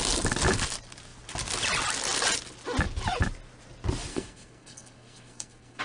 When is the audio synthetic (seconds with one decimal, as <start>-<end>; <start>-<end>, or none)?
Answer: 4.1-5.8